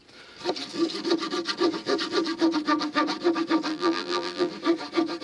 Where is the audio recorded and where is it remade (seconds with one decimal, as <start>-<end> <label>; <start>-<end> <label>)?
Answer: 0.0-3.7 recorded; 3.7-4.5 remade; 4.5-5.2 recorded